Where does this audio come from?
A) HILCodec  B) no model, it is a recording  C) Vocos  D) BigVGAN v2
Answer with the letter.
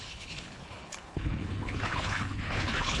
A